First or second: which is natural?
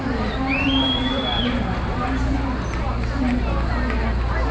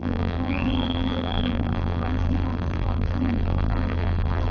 first